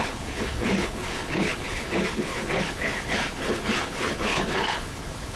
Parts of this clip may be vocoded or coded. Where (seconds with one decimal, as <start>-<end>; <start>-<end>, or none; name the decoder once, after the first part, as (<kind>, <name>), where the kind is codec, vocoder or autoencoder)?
0.0-5.4 (codec, HILCodec)